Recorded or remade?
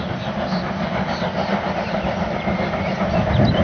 recorded